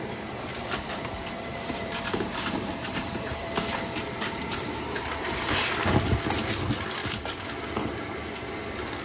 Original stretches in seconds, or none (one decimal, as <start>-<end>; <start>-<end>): 0.0-1.5; 6.1-7.0; 8.1-9.0